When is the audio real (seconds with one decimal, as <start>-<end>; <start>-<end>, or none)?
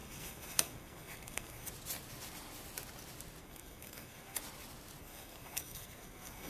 1.7-3.4; 4.4-5.0